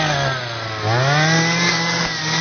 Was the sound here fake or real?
real